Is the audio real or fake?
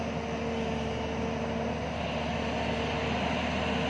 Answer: real